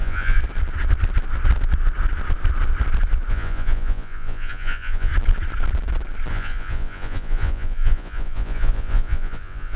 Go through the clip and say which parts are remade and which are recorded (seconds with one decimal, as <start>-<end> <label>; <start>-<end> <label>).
0.0-0.4 remade; 0.4-3.3 recorded; 3.3-5.1 remade; 5.1-6.3 recorded; 6.3-9.8 remade